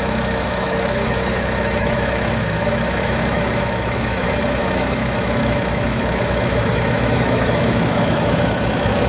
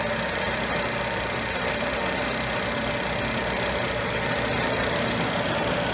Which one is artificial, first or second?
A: first